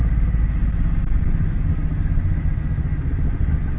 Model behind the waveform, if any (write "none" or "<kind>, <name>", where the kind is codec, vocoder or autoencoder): none